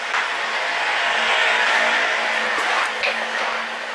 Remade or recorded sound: recorded